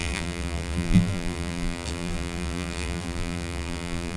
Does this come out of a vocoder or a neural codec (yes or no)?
yes